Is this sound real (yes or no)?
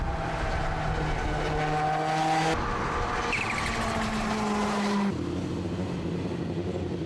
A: yes